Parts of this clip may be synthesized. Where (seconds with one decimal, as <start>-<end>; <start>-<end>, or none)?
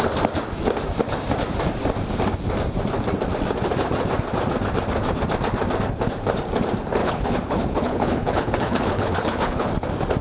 7.0-9.7